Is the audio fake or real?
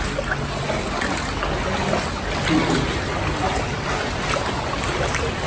real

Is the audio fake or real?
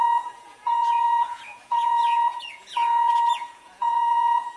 fake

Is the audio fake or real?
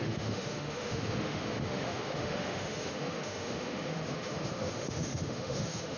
fake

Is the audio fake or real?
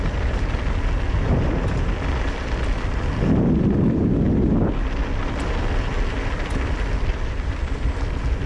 real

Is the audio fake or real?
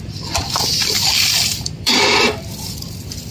fake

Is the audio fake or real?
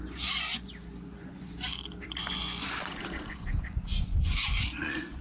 fake